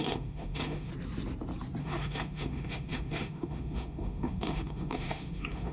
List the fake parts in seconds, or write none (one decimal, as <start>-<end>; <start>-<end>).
0.0-0.9; 1.8-5.7